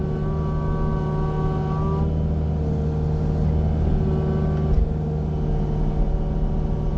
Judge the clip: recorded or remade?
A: recorded